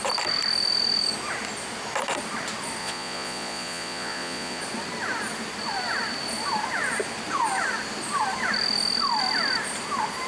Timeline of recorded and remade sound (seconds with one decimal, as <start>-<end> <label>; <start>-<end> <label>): 0.0-2.8 recorded; 2.8-4.6 remade; 4.6-10.3 recorded